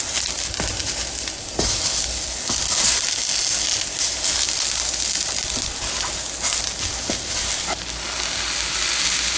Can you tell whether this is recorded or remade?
recorded